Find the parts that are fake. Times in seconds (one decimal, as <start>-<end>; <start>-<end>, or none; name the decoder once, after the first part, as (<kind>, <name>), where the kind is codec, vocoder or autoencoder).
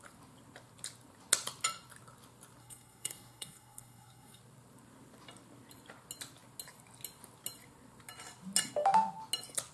2.6-4.4 (codec, SNAC)